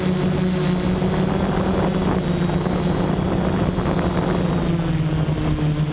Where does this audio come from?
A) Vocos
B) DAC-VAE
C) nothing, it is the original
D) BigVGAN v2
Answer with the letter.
C